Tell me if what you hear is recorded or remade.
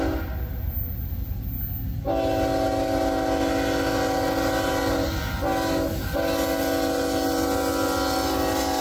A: recorded